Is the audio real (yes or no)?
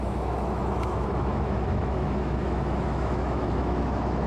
no